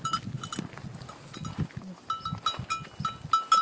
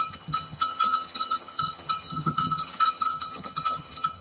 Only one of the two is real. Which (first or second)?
first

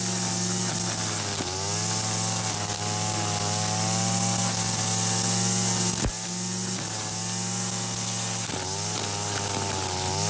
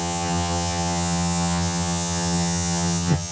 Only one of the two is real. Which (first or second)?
first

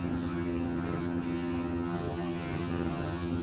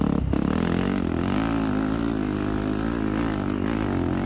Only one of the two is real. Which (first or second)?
second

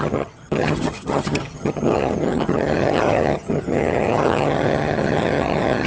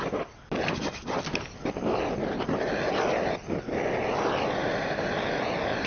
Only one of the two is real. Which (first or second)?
second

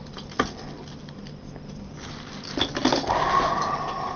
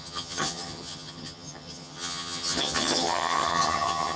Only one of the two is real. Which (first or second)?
first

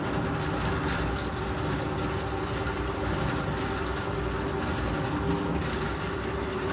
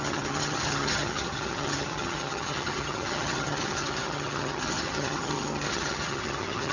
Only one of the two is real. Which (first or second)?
first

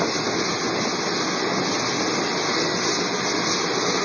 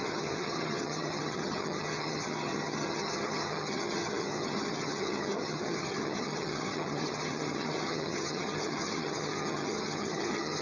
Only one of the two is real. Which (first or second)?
first